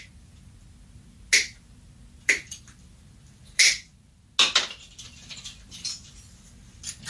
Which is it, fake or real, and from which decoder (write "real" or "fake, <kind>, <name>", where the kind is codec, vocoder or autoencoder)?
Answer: real